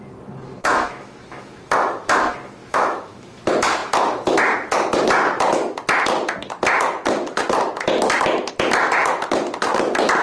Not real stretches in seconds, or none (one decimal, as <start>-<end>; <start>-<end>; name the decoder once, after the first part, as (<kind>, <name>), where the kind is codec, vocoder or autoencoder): 0.6-1.6 (autoencoder, DAC-VAE); 2.6-3.4